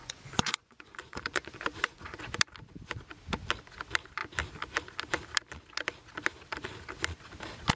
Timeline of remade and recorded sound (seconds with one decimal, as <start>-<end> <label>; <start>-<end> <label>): 0.0-2.2 remade; 2.2-7.8 recorded